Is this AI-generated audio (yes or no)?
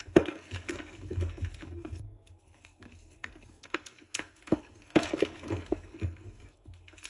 yes